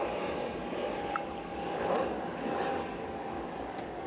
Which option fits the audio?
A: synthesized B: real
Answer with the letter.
A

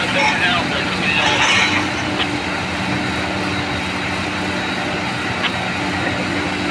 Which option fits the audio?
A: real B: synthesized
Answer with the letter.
A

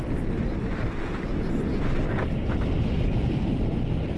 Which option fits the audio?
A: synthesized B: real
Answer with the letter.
B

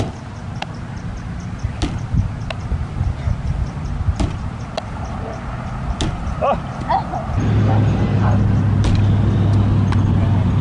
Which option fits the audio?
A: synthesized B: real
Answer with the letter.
B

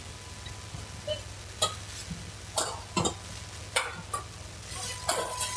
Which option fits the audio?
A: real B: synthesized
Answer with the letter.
A